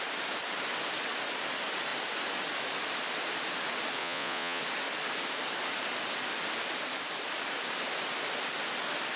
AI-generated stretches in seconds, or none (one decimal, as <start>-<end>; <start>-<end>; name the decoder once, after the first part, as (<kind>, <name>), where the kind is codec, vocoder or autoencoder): 4.0-4.6 (vocoder, Vocos)